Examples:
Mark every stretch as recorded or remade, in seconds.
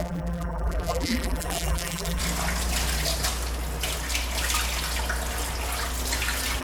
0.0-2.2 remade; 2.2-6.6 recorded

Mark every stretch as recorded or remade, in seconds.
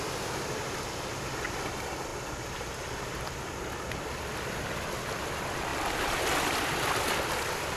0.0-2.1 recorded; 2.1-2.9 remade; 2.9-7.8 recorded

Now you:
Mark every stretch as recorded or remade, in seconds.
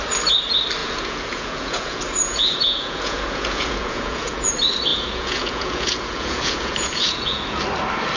0.0-0.8 recorded; 0.8-4.5 remade; 4.5-4.9 recorded; 4.9-7.6 remade; 7.6-8.2 recorded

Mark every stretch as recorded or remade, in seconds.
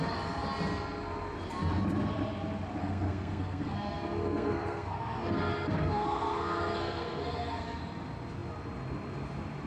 0.0-2.8 recorded; 2.8-7.8 remade; 7.8-9.7 recorded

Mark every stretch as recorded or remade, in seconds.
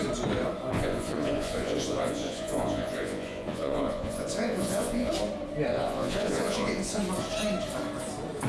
0.0-0.7 recorded; 0.7-5.1 remade; 5.1-5.7 recorded; 5.7-7.0 remade; 7.0-8.5 recorded